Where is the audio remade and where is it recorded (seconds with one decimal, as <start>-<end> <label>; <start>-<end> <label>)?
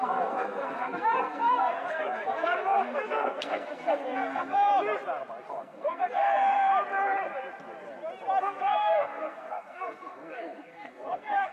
0.0-4.7 remade; 4.7-5.5 recorded; 5.5-6.7 remade; 6.7-8.4 recorded; 8.4-11.5 remade